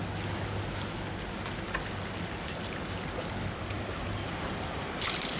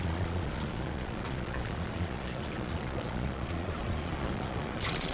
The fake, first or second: second